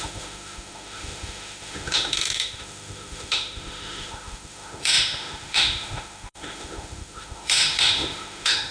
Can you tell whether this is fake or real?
fake